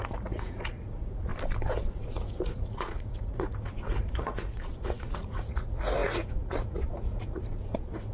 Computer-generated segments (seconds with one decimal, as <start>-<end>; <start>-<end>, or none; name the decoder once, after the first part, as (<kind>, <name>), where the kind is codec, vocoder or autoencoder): 0.0-1.3 (vocoder, Vocos); 1.9-8.1